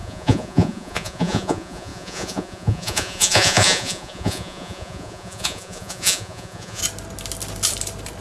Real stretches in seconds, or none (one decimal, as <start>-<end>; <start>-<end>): 6.8-8.2